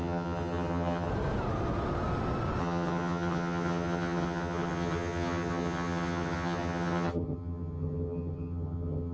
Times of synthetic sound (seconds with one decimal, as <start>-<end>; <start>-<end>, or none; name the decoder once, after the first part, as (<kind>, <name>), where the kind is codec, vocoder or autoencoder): 0.0-1.1 (vocoder, HiFi-GAN); 2.6-9.1